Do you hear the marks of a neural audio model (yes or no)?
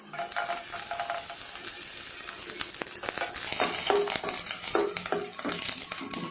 no